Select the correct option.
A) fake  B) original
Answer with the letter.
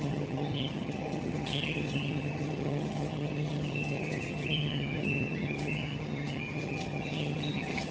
A